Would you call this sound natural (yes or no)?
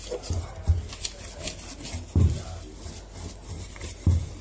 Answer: yes